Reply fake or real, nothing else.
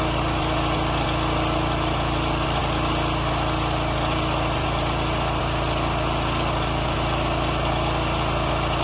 real